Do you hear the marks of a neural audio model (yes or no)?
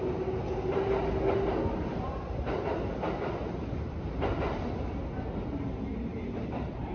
no